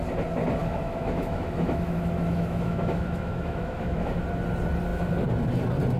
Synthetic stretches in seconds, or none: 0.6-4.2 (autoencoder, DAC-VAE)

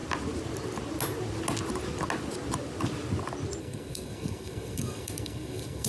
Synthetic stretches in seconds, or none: 3.6-5.9 (codec, SNAC)

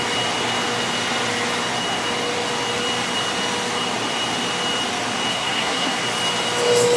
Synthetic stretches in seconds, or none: 5.3-6.0 (codec, SNAC)

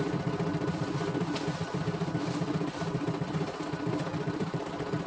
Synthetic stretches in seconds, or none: 0.5-3.6 (vocoder, BigVGAN v2); 4.1-4.6